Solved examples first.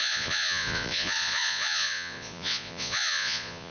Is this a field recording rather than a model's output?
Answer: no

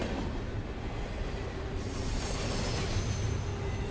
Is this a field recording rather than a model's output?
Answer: yes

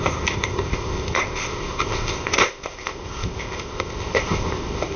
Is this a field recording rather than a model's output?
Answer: no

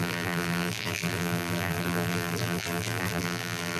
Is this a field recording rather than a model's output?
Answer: no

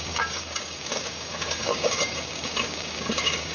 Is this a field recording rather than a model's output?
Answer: no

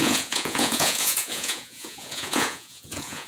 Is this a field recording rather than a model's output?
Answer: no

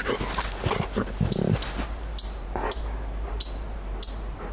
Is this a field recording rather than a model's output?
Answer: yes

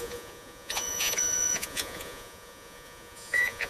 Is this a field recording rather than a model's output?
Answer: no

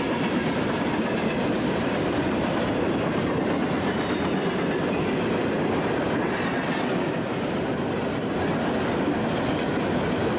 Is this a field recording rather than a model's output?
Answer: yes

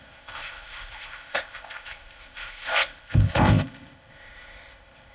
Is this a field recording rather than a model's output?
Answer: no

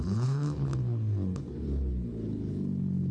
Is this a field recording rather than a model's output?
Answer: no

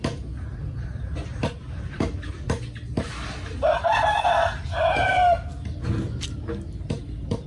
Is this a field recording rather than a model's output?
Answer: yes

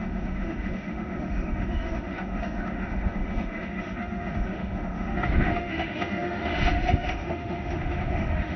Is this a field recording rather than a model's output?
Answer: no